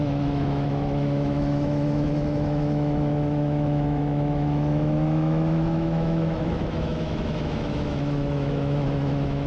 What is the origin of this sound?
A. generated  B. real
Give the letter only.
A